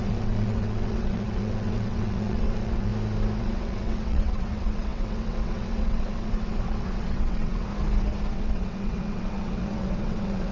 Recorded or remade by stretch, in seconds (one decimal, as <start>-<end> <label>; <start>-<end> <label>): 0.0-2.9 remade; 2.9-3.4 recorded; 3.4-7.7 remade; 7.7-8.3 recorded; 8.3-10.5 remade